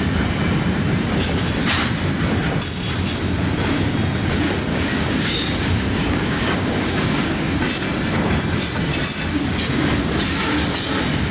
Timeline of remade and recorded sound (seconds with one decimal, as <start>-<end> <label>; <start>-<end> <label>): 0.0-4.7 recorded; 4.7-7.6 remade; 7.6-11.3 recorded